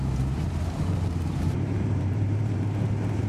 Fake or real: fake